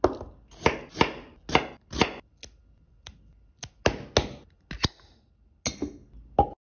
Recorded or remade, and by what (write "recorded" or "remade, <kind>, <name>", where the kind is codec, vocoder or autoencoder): recorded